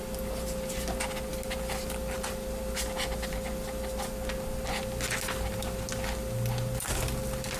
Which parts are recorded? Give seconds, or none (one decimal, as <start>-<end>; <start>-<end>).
0.0-7.6